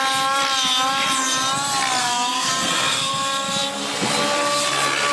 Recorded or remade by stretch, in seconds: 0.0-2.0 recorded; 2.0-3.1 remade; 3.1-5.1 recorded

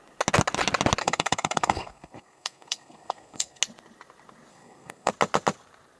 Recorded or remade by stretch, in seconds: 0.0-1.0 recorded; 1.0-3.6 remade; 3.6-4.5 recorded; 4.5-5.1 remade; 5.1-6.0 recorded

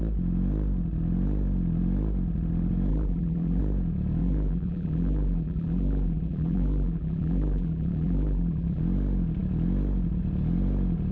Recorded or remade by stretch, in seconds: 0.0-2.9 recorded; 2.9-3.6 remade; 3.6-4.2 recorded; 4.2-8.8 remade; 8.8-11.1 recorded